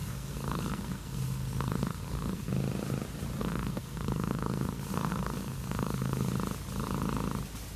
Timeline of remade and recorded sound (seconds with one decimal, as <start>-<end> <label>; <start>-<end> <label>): 0.0-2.5 remade; 2.5-3.4 recorded; 3.4-6.3 remade; 6.3-7.8 recorded